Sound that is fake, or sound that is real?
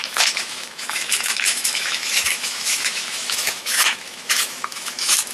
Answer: fake